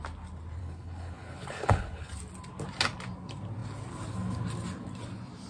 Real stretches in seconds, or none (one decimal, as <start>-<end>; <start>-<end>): 0.0-0.6; 2.1-5.5